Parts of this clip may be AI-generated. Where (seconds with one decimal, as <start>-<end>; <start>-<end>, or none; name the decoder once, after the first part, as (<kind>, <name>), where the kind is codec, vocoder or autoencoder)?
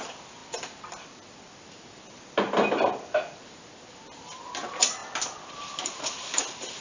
5.0-5.5 (vocoder, BigVGAN v2)